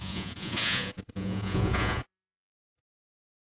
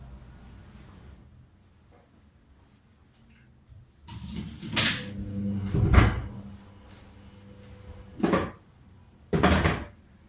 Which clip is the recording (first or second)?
second